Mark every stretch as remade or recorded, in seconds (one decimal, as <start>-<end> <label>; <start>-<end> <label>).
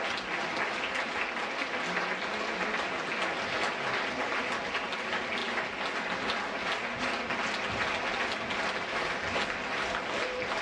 0.0-10.6 recorded